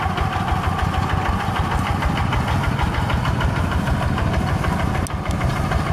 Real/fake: real